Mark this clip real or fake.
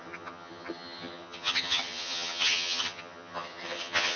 fake